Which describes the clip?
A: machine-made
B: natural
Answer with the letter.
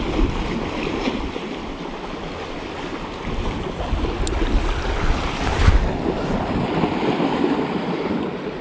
B